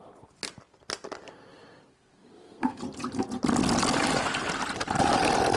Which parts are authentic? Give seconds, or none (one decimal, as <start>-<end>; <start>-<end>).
0.0-1.9; 2.8-5.6